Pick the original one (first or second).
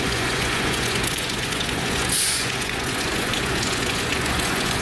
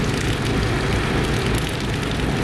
second